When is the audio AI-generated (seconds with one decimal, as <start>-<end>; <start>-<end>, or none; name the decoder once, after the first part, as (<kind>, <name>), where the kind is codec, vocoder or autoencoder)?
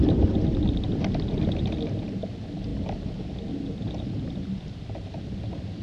none